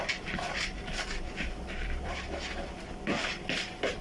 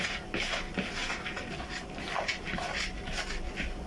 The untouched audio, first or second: second